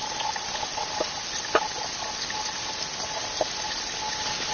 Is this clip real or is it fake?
real